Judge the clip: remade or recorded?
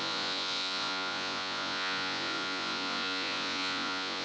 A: remade